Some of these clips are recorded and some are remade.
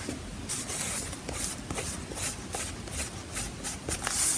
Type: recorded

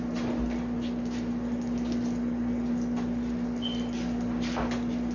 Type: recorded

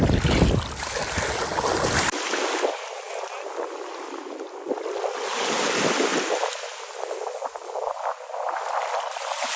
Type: recorded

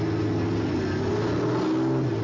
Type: recorded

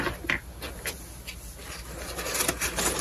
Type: recorded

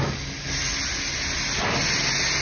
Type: recorded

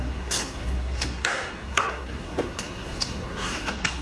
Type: remade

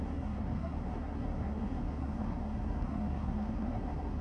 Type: remade